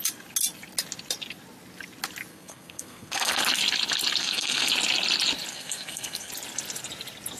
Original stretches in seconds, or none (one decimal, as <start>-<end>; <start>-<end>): 0.0-2.3; 3.4-4.2; 4.7-5.5; 6.3-7.4